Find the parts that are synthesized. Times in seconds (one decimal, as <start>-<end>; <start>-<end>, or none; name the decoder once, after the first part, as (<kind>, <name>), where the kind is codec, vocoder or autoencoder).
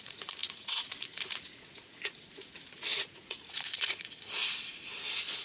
0.0-4.4 (vocoder, Vocos)